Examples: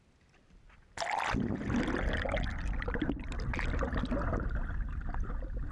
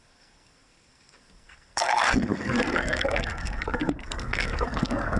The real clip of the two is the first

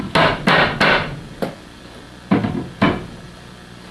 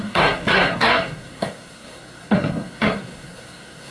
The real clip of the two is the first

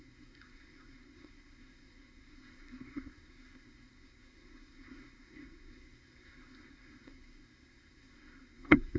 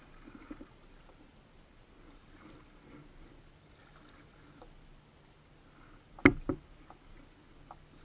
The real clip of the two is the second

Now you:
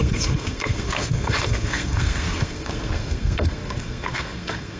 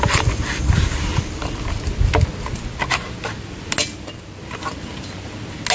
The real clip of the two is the second